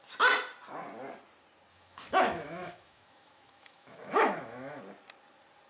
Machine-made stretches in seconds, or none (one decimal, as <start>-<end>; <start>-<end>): 1.7-4.8